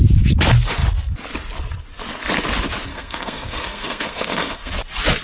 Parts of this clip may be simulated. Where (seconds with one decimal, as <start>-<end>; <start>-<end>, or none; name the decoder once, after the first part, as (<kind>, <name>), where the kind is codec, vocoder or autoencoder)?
2.9-4.7 (codec, SNAC)